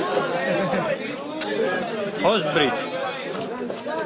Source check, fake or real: real